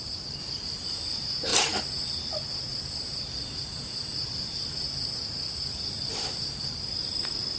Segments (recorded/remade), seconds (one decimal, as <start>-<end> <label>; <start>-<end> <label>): 0.0-7.6 recorded

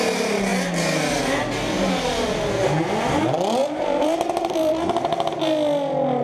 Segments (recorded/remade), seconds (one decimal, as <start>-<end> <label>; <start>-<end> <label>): 0.0-3.6 recorded; 3.6-4.7 remade; 4.7-6.2 recorded

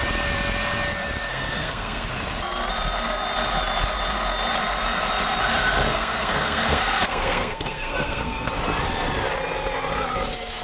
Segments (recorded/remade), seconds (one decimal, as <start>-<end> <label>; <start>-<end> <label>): 0.0-1.3 recorded; 1.3-2.1 remade; 2.1-5.9 recorded; 5.9-8.5 remade; 8.5-10.6 recorded